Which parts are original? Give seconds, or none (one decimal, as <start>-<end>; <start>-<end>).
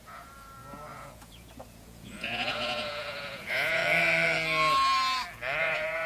3.8-5.6